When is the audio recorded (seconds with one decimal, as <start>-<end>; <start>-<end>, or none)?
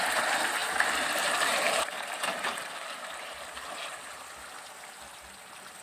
0.0-0.6; 4.1-5.8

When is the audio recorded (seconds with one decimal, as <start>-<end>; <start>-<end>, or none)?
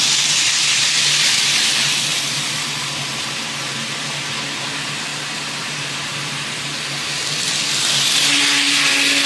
0.0-9.3